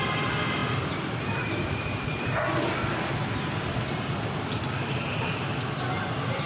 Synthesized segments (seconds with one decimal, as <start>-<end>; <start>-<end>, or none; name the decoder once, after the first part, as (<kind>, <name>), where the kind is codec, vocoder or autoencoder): none